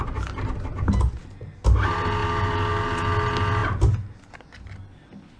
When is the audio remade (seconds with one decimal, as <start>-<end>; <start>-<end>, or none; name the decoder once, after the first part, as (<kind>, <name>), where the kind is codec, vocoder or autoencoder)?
none